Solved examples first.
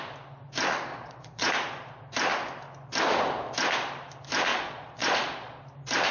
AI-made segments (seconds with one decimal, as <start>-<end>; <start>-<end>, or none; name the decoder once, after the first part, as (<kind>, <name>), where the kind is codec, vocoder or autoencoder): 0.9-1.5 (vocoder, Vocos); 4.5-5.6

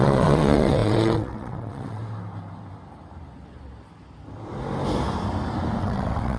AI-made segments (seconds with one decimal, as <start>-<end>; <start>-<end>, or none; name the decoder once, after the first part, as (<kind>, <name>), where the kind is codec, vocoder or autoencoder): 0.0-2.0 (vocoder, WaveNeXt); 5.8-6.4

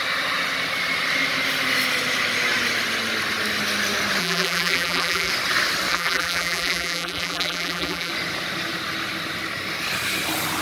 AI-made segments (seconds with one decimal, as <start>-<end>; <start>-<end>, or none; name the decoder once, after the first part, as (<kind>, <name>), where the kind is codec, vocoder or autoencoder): 4.2-5.3 (vocoder, BigVGAN v2); 5.9-8.1

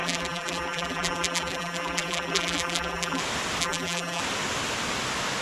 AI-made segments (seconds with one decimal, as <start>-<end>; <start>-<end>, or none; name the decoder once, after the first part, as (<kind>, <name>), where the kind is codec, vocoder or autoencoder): 0.0-3.2 (vocoder, BigVGAN v2); 3.6-4.2

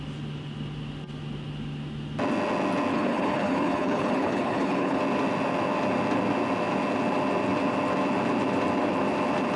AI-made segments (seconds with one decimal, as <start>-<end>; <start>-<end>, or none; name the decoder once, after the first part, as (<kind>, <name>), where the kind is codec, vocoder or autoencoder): 2.9-5.0 (codec, HILCodec)

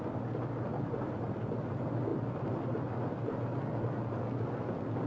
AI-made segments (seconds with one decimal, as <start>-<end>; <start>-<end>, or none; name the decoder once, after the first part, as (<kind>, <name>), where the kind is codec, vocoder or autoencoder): 0.7-1.7 (vocoder, BigVGAN v2)

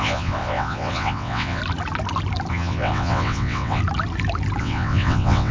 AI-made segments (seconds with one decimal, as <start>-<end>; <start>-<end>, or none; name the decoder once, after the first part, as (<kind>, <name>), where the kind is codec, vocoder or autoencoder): 0.0-1.6 (vocoder, WaveNeXt); 2.5-3.8; 4.6-5.5

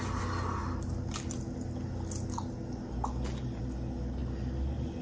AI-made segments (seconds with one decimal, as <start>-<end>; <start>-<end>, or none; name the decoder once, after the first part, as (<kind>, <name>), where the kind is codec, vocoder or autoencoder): none